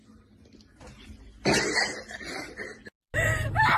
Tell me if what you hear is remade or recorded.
recorded